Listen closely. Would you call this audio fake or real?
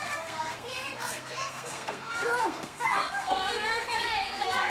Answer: fake